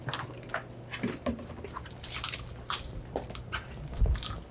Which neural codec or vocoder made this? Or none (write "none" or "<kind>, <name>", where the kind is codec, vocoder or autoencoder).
none